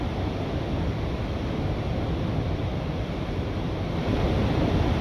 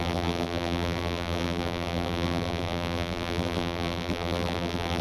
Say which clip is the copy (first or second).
second